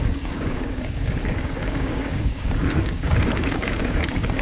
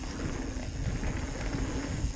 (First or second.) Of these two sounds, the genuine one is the second